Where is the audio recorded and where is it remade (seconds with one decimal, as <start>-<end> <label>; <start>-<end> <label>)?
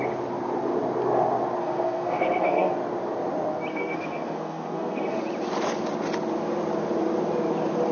0.0-1.6 recorded; 1.6-2.7 remade; 2.7-3.7 recorded; 3.7-5.2 remade; 5.2-7.9 recorded